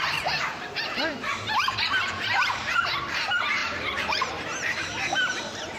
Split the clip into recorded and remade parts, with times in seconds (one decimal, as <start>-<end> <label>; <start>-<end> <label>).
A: 0.0-0.4 recorded; 0.4-2.8 remade; 2.8-3.6 recorded; 3.6-5.8 remade